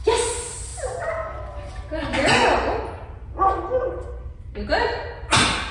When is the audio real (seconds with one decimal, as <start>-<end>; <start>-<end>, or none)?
0.0-0.7; 1.7-5.7